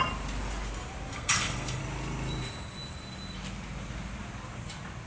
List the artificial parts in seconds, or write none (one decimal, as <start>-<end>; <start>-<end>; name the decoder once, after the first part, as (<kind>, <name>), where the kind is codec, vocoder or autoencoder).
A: 1.1-1.8 (codec, SNAC)